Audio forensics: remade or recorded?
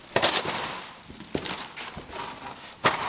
recorded